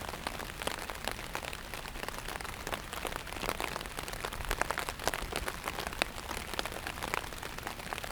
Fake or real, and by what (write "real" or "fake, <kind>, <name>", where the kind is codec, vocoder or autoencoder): real